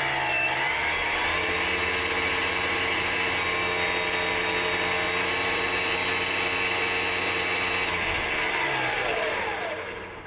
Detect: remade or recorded recorded